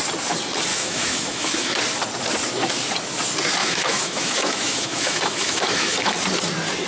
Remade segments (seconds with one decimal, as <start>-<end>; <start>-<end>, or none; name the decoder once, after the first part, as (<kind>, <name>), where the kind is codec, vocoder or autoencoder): 0.7-1.8 (autoencoder, DAC-VAE); 3.6-6.1

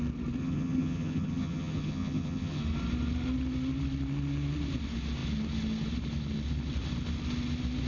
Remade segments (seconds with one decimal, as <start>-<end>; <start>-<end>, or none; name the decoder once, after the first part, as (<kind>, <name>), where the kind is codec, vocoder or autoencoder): 0.4-2.6 (vocoder, HiFi-GAN)

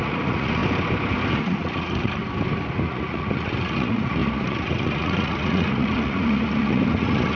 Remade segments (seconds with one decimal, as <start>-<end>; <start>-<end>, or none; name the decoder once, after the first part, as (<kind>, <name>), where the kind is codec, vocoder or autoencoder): 0.0-0.6 (vocoder, Vocos); 1.3-2.2; 2.7-7.4

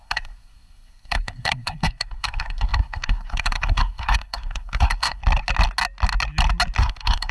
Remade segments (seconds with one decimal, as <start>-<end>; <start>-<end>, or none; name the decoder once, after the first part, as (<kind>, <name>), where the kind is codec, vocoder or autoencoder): 0.0-5.2 (codec, SNAC); 6.8-7.3

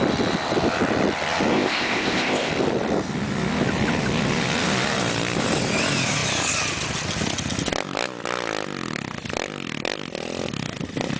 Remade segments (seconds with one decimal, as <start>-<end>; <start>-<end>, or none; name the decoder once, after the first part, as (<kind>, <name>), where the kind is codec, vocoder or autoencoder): 1.5-2.5 (codec, ZipCodec)

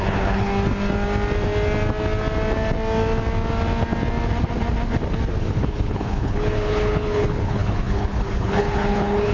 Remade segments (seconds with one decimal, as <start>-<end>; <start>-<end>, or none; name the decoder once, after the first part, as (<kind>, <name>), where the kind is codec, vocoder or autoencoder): 0.0-0.5 (codec, HILCodec); 5.4-9.3

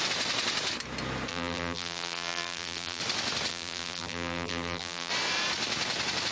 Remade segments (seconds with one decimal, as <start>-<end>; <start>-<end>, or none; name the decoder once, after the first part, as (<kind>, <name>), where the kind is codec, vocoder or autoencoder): 1.3-3.0 (vocoder, BigVGAN v2); 3.5-5.1

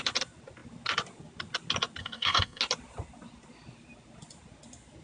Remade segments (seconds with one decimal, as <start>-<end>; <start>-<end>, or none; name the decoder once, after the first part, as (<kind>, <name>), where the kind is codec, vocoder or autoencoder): 2.0-2.6 (codec, SNAC)